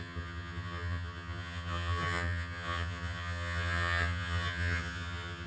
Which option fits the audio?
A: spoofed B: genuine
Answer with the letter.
A